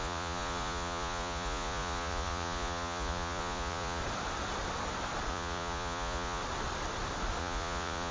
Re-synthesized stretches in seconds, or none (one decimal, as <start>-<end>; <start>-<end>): 0.0-4.0; 5.3-6.4; 7.4-8.1